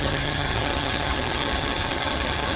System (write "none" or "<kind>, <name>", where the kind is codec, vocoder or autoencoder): vocoder, HiFi-GAN